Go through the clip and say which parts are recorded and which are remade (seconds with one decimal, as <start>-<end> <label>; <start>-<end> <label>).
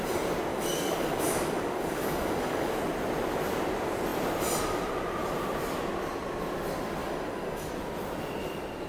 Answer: 0.0-0.5 recorded; 0.5-2.7 remade; 2.7-7.0 recorded; 7.0-7.7 remade; 7.7-8.9 recorded